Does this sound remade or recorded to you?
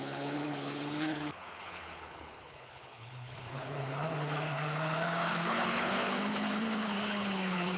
remade